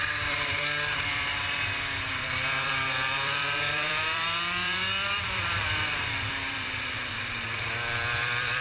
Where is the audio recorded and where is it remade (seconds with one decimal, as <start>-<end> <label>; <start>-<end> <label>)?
0.0-1.3 remade; 1.3-2.2 recorded; 2.2-8.6 remade